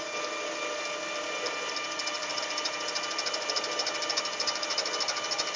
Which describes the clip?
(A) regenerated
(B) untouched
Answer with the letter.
B